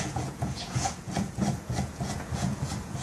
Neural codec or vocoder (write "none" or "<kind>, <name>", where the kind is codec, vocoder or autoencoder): vocoder, Vocos